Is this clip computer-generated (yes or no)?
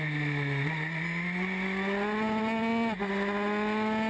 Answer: no